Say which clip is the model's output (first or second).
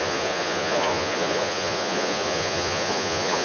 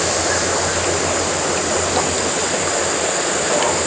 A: first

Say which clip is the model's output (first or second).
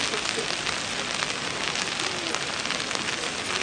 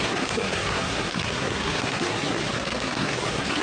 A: second